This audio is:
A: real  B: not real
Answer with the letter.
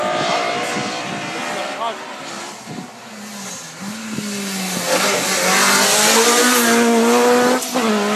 A